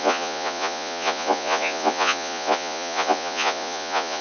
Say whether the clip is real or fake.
fake